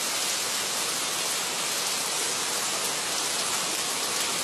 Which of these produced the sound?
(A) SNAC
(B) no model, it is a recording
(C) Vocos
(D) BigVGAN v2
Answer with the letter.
D